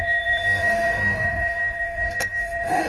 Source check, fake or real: fake